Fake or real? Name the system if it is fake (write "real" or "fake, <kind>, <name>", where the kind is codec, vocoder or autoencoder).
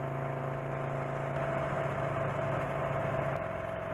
real